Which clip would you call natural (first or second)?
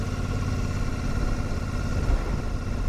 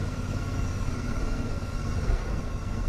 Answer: first